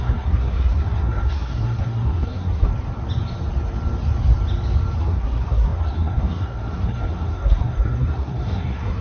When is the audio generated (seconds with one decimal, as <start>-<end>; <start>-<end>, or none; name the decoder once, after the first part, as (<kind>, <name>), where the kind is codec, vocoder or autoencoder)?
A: 0.0-2.7 (codec, SNAC); 5.0-9.0